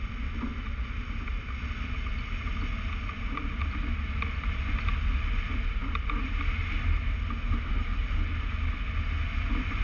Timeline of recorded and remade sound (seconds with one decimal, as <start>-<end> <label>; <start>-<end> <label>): 0.0-9.8 recorded